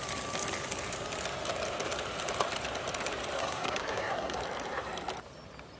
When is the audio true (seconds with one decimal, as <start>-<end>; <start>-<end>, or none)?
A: 0.0-3.4; 4.4-5.8